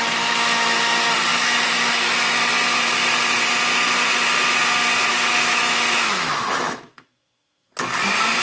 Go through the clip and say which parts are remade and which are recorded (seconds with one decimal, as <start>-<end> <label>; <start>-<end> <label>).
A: 0.0-1.3 recorded; 1.3-2.2 remade; 2.2-5.1 recorded; 5.1-7.7 remade; 7.7-8.4 recorded